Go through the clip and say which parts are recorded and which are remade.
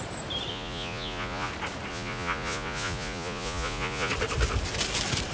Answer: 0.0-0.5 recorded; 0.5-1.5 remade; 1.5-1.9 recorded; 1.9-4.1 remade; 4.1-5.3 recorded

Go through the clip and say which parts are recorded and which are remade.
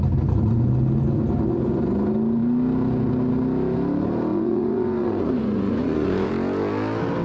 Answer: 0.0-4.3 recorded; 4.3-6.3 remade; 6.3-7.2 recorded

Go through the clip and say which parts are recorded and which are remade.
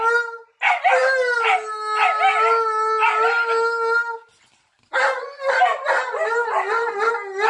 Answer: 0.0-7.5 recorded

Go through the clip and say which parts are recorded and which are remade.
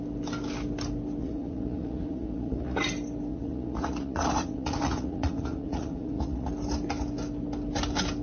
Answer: 0.0-1.2 recorded; 1.2-2.8 remade; 2.8-3.3 recorded; 3.3-6.5 remade; 6.5-8.2 recorded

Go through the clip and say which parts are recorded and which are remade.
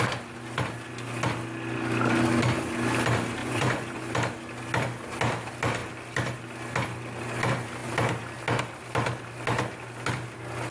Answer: 0.0-3.4 recorded; 3.4-4.1 remade; 4.1-10.7 recorded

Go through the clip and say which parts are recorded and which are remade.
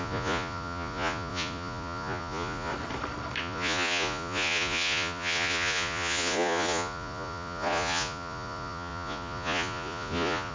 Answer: 0.0-2.7 remade; 2.7-3.4 recorded; 3.4-10.5 remade